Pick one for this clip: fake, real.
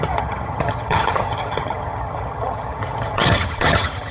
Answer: fake